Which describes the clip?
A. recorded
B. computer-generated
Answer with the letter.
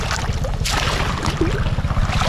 A